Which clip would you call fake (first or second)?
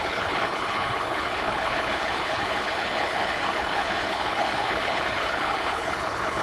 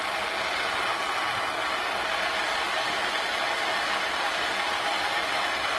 first